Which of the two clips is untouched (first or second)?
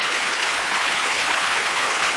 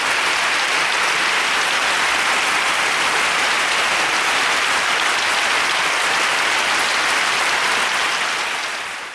second